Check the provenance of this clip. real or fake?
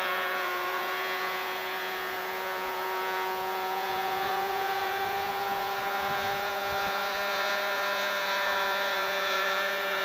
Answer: fake